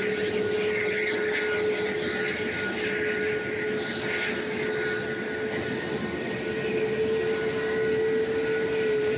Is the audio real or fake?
real